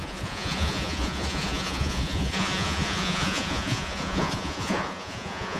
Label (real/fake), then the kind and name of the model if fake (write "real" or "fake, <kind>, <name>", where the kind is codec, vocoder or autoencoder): fake, vocoder, Vocos